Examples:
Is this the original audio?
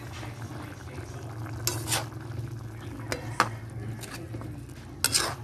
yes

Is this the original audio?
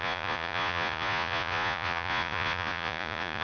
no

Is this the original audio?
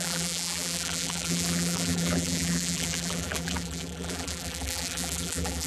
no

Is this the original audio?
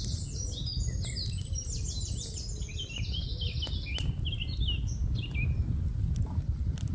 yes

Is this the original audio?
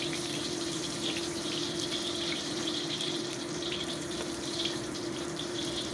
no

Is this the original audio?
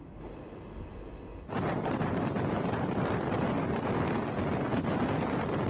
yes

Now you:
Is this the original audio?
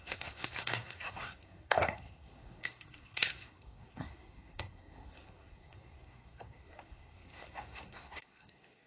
no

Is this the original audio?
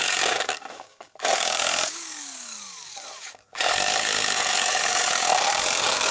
no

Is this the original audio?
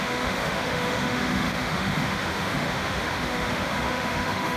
no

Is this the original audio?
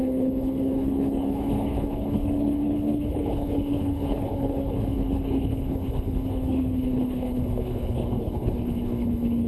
no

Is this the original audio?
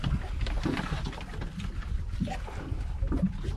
yes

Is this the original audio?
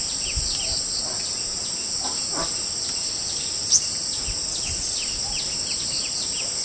yes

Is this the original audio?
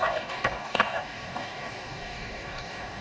no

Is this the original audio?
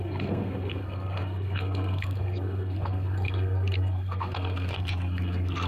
no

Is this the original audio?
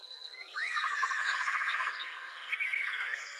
no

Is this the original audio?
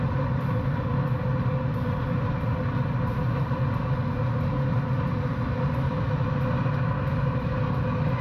yes